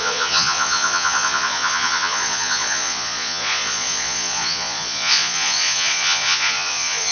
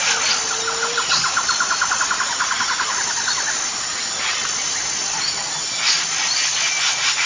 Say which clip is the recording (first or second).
second